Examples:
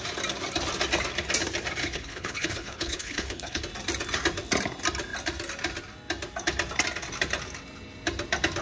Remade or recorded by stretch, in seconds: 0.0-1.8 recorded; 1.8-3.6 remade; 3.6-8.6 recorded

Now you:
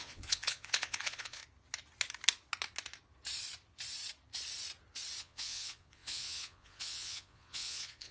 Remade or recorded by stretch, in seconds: 0.0-1.4 remade; 1.4-5.2 recorded; 5.2-8.1 remade

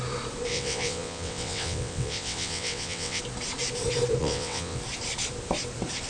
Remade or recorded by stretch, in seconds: 0.0-0.5 recorded; 0.5-3.2 remade; 3.2-4.2 recorded; 4.2-4.8 remade; 4.8-6.1 recorded

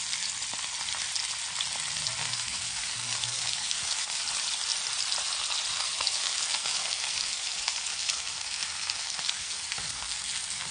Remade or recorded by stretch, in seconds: 0.0-2.2 recorded; 2.2-4.2 remade; 4.2-5.7 recorded; 5.7-10.7 remade

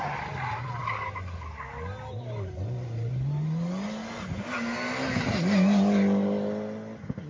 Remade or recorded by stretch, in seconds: 0.0-7.3 recorded

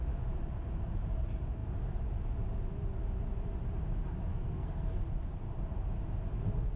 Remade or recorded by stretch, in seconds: 0.0-4.3 recorded; 4.3-5.0 remade; 5.0-6.8 recorded

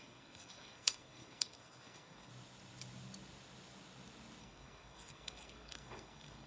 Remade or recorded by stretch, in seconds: 0.0-2.3 remade; 2.3-4.4 recorded; 4.4-6.5 remade

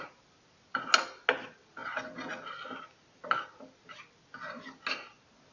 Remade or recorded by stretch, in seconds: 0.0-5.5 recorded